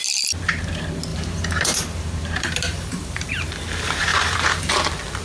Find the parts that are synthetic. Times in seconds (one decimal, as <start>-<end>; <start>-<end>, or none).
1.1-3.5; 4.1-4.6